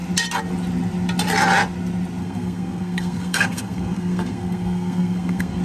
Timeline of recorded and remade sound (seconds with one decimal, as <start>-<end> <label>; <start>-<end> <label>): 0.0-2.2 recorded; 2.2-5.6 remade